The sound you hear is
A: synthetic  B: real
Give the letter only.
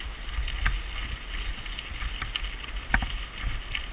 B